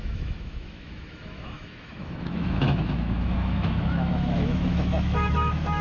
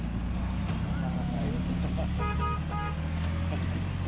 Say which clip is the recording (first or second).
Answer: second